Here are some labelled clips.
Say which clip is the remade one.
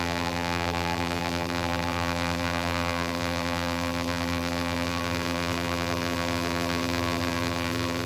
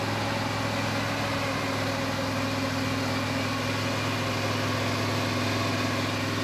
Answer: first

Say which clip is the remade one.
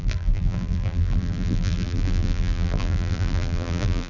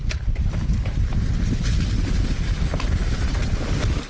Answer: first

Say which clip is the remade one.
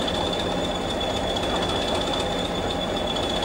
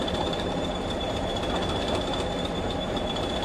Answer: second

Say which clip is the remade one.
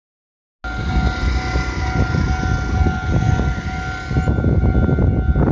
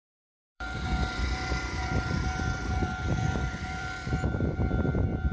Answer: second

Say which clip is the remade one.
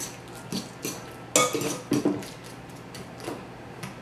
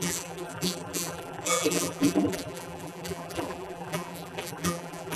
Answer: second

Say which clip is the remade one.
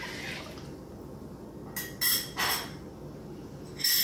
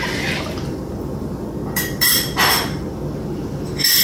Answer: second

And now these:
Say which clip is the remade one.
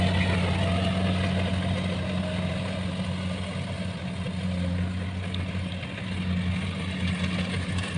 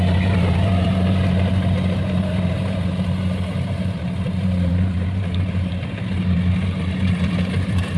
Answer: second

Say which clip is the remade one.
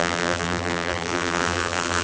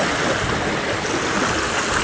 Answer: first